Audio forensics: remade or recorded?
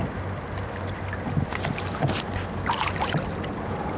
recorded